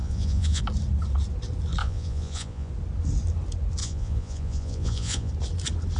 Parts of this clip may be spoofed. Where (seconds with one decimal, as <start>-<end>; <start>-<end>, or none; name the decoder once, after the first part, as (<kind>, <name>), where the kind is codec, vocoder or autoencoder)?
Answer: 0.0-0.6 (vocoder, Vocos); 1.8-2.7; 3.8-5.3